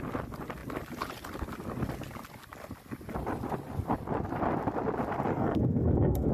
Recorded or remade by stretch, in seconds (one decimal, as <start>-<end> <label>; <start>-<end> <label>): 0.0-5.3 recorded; 5.3-6.3 remade